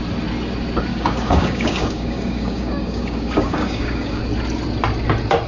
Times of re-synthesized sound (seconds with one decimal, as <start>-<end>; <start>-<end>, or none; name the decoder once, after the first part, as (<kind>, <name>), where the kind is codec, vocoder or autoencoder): 0.9-4.2 (codec, DAC)